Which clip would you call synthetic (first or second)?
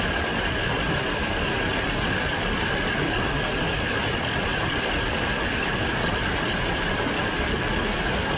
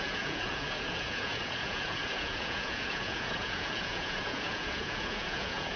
second